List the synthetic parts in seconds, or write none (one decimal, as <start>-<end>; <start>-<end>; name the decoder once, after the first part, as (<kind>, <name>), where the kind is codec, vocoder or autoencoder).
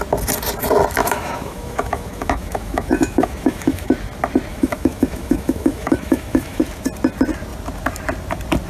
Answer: 1.0-3.9 (autoencoder, DAC-VAE); 4.5-6.6